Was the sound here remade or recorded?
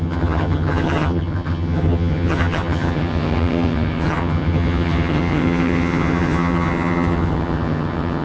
remade